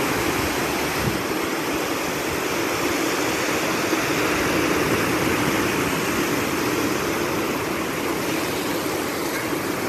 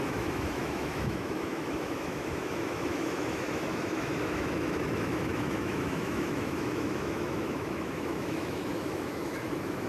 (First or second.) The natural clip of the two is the first